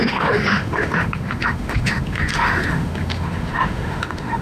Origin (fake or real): fake